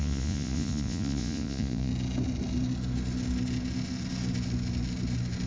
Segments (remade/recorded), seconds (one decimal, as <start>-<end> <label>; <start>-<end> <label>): 0.0-1.9 remade; 1.9-5.5 recorded